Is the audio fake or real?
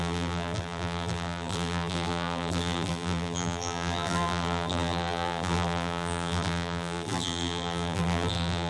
fake